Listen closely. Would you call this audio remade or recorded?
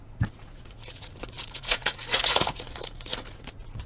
remade